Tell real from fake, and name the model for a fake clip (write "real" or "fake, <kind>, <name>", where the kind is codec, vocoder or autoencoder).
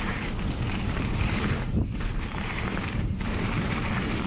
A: fake, vocoder, BigVGAN v2